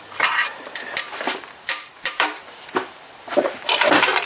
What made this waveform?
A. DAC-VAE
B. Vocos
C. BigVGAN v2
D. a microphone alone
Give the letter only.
C